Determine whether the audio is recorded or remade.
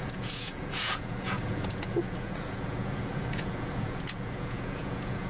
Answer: remade